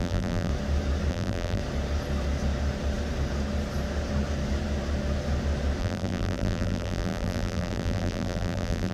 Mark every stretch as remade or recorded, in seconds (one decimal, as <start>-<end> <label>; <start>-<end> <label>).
0.0-0.5 remade; 0.5-1.1 recorded; 1.1-1.6 remade; 1.6-5.8 recorded; 5.8-8.9 remade